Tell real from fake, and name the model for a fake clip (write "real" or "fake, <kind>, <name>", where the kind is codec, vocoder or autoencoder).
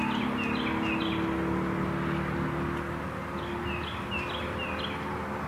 real